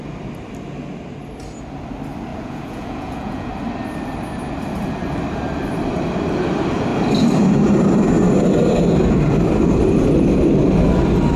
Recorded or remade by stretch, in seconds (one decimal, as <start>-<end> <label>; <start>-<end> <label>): 0.0-2.3 recorded; 2.3-3.5 remade; 3.5-11.4 recorded